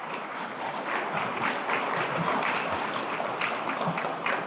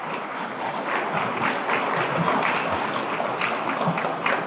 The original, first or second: second